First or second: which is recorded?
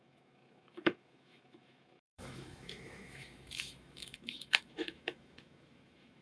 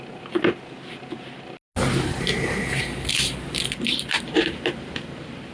second